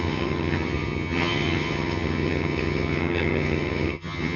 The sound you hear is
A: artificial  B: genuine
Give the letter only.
A